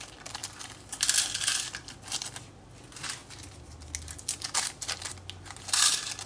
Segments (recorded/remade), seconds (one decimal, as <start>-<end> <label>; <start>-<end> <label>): 0.0-6.3 recorded

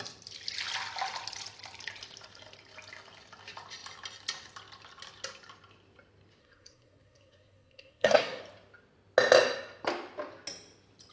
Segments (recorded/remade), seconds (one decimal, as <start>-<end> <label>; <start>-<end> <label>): 0.0-6.4 recorded; 6.4-8.4 remade; 8.4-11.1 recorded

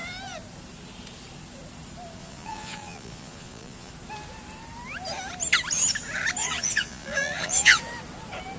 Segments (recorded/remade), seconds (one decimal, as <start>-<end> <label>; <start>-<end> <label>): 0.0-2.2 recorded; 2.2-3.9 remade; 3.9-6.4 recorded; 6.4-7.8 remade; 7.8-8.6 recorded

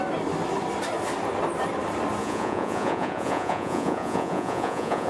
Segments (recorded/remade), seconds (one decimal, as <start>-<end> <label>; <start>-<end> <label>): 0.0-2.2 recorded; 2.2-5.1 remade